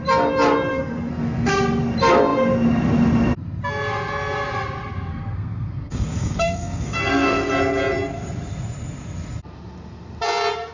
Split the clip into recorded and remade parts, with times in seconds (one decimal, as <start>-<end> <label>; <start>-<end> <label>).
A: 0.0-0.7 recorded; 0.7-1.5 remade; 1.5-5.1 recorded; 5.1-7.5 remade; 7.5-10.7 recorded